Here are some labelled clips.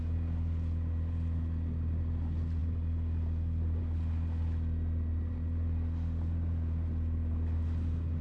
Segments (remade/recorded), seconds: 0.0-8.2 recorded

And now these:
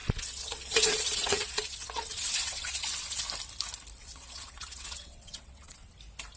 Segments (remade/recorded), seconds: 0.0-3.2 remade; 3.2-4.0 recorded; 4.0-5.9 remade; 5.9-6.4 recorded

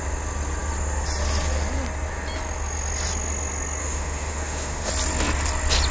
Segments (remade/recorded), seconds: 0.0-3.8 recorded; 3.8-4.9 remade; 4.9-5.9 recorded

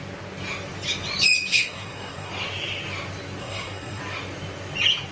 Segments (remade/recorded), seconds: 0.0-1.5 recorded; 1.5-2.3 remade; 2.3-3.4 recorded; 3.4-4.0 remade; 4.0-5.1 recorded